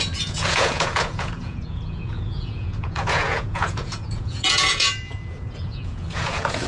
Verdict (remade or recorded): remade